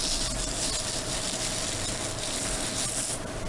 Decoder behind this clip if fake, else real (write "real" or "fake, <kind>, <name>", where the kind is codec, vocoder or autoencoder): real